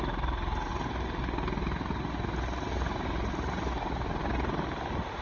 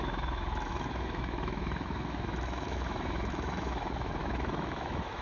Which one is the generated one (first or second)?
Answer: second